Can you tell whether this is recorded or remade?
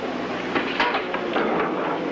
recorded